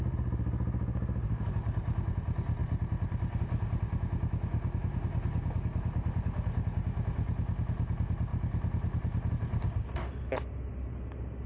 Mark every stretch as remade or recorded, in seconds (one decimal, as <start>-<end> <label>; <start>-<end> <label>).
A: 0.0-11.5 recorded